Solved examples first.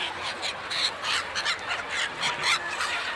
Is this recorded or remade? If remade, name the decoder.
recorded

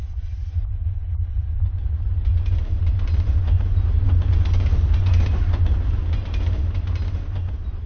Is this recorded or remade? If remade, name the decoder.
recorded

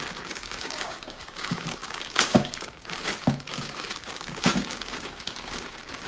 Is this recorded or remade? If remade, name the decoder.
remade, codec, DAC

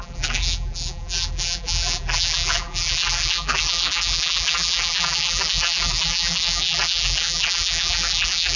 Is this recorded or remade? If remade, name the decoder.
remade, vocoder, BigVGAN v2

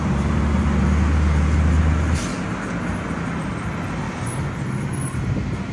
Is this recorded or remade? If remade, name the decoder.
recorded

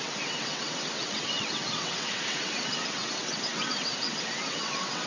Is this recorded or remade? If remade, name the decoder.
remade, vocoder, WaveNeXt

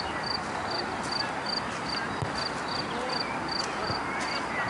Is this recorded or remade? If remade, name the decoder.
recorded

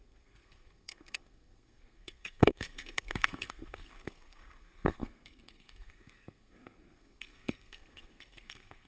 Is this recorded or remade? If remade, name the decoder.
remade, codec, SNAC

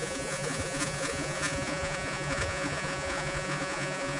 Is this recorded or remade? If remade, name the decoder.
remade, vocoder, Vocos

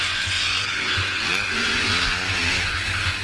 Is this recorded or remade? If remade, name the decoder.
remade, vocoder, Vocos